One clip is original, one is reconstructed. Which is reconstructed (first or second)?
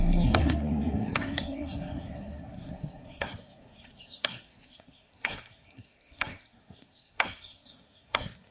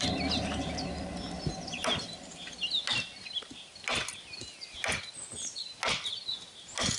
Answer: first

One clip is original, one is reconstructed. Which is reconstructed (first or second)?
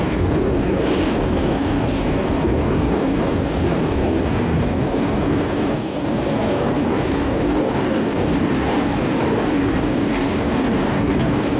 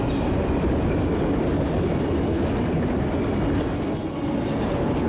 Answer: first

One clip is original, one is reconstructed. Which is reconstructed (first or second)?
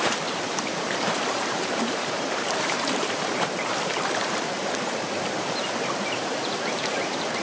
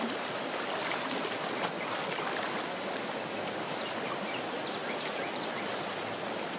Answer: first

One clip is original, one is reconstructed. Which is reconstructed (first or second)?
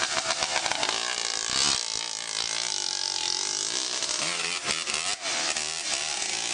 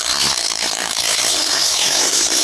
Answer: second